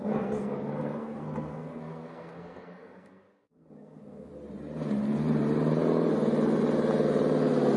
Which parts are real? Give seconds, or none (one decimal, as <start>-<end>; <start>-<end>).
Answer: 4.3-7.8